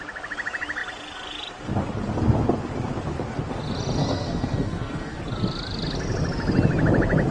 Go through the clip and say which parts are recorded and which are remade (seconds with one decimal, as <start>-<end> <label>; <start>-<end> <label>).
0.0-4.0 recorded; 4.0-5.2 remade; 5.2-7.3 recorded